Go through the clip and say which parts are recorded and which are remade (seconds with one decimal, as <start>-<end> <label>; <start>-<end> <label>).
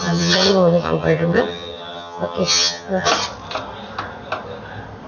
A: 0.0-3.1 remade; 3.1-5.1 recorded